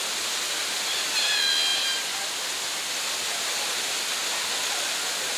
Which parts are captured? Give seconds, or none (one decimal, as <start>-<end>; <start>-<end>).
0.0-5.4

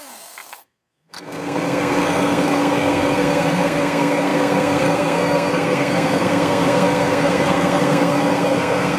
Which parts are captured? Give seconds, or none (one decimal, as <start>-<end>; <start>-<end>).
none

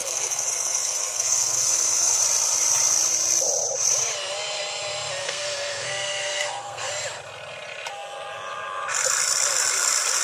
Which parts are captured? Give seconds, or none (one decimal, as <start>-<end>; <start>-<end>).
2.2-5.2; 6.9-10.2

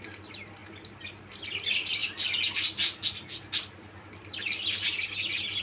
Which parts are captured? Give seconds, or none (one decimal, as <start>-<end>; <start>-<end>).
0.0-5.6

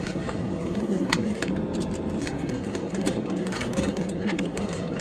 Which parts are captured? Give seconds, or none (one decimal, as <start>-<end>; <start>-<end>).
1.5-2.2

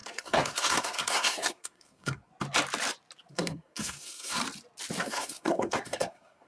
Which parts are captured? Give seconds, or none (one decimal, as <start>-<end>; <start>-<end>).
2.3-3.3; 4.4-5.0